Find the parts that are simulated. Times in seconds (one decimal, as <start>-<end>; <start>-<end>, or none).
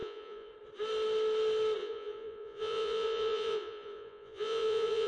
0.0-0.5; 1.8-5.1